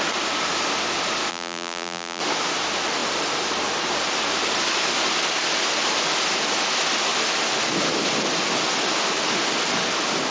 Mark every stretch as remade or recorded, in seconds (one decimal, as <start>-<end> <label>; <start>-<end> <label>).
0.0-1.3 recorded; 1.3-2.2 remade; 2.2-10.3 recorded